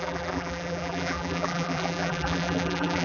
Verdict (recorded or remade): remade